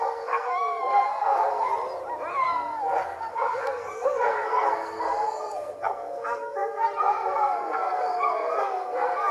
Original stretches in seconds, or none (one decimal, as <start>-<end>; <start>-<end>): 1.7-2.3